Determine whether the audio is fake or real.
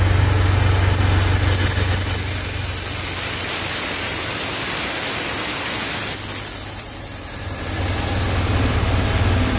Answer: real